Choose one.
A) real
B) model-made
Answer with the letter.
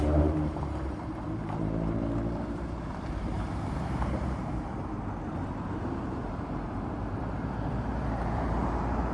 B